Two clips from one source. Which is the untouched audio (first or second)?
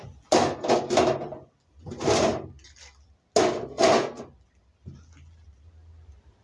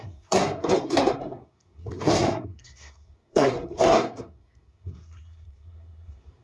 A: first